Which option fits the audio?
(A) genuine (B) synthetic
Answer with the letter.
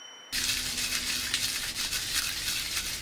A